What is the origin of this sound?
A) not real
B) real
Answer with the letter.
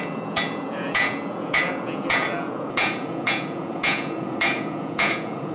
A